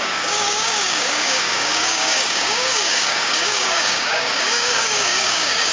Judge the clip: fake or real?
fake